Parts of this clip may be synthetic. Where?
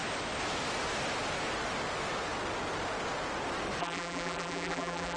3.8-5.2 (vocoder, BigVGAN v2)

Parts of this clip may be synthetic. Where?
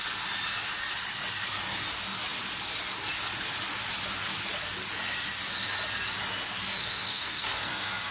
6.8-8.1 (codec, SNAC)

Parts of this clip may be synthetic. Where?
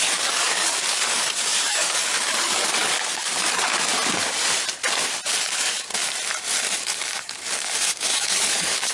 0.0-3.9 (codec, DAC); 5.4-5.9; 6.8-8.9